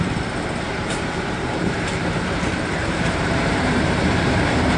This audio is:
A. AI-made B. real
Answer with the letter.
A